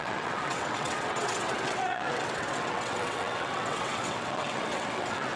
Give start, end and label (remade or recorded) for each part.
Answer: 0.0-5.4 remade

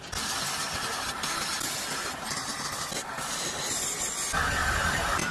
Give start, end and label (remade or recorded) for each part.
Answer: 0.0-4.6 recorded; 4.6-5.3 remade

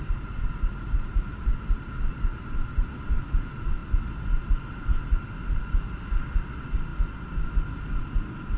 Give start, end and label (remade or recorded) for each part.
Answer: 0.0-8.6 recorded

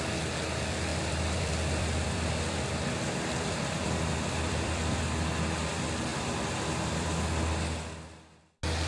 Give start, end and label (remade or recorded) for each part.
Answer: 0.0-0.9 recorded; 0.9-5.0 remade; 5.0-6.1 recorded; 6.1-7.2 remade; 7.2-8.9 recorded

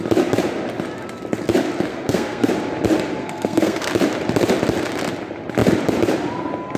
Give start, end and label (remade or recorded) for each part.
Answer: 0.0-1.9 recorded; 1.9-2.5 remade; 2.5-3.2 recorded; 3.2-3.9 remade; 3.9-6.8 recorded